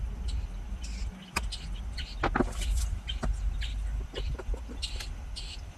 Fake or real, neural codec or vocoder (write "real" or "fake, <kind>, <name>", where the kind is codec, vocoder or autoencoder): real